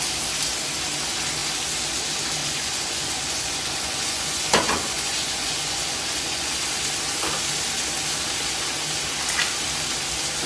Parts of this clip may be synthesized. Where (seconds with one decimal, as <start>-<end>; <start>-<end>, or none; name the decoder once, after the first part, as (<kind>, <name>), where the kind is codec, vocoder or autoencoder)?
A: 2.4-6.5 (vocoder, Vocos)